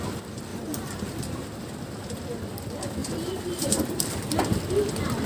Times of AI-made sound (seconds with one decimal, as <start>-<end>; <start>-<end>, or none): 0.5-1.6; 3.0-4.4